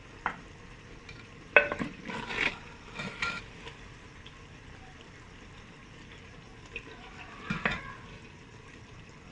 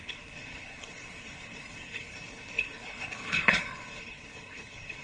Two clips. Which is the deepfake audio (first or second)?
second